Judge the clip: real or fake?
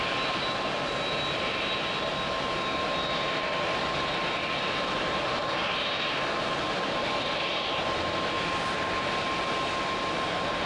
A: real